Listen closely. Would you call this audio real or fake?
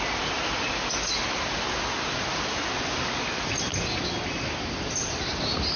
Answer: real